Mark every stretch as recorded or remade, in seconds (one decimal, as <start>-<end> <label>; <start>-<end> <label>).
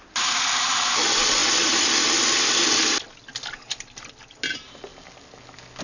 0.0-5.8 recorded